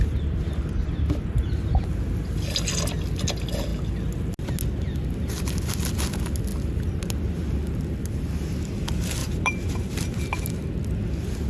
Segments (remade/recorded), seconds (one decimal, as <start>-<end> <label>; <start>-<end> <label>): 0.0-9.2 recorded; 9.2-9.9 remade; 9.9-11.5 recorded